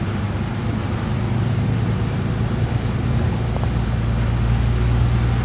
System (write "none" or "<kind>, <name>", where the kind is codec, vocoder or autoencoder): vocoder, BigVGAN v2